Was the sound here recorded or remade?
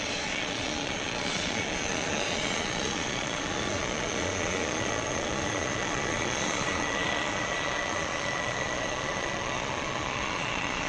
remade